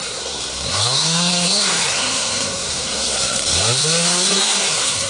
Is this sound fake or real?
fake